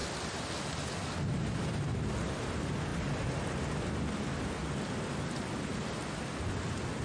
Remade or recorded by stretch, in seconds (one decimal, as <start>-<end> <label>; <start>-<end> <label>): 0.0-7.0 recorded